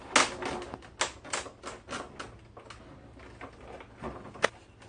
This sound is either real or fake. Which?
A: real